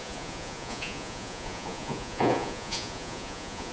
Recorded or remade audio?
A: remade